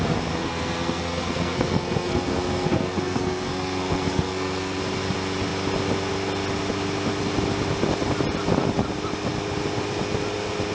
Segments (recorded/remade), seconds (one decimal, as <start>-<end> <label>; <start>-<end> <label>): 0.0-0.4 recorded; 0.4-4.8 remade; 4.8-10.7 recorded